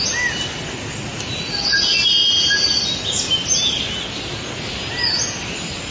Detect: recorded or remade recorded